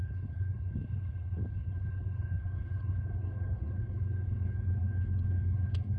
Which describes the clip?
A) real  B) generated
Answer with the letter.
B